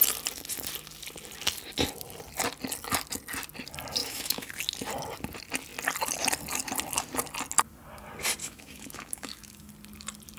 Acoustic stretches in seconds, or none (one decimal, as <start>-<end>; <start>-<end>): 0.0-4.0; 4.5-8.4; 9.7-10.4